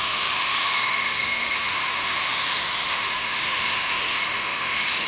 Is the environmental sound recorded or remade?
remade